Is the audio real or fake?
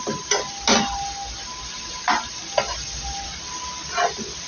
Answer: real